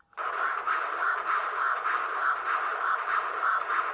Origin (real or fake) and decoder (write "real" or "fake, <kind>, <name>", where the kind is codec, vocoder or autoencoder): fake, vocoder, BigVGAN v2